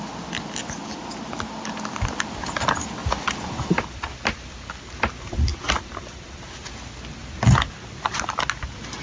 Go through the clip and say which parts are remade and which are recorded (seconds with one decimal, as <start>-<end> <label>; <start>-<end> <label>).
0.0-3.0 recorded; 3.0-4.0 remade; 4.0-5.5 recorded; 5.5-6.4 remade; 6.4-9.0 recorded